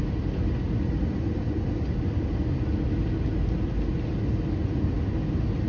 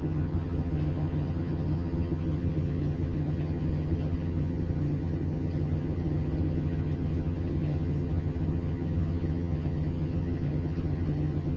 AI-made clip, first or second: second